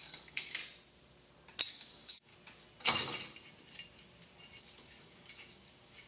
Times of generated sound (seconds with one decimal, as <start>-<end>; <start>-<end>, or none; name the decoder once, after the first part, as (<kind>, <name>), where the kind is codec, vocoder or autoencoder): 0.0-0.6 (codec, DAC); 1.7-2.3; 4.6-6.1

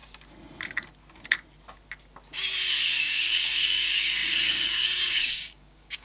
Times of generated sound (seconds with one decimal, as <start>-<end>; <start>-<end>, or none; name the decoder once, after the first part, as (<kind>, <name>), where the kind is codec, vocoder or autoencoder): 3.0-6.0 (codec, DAC)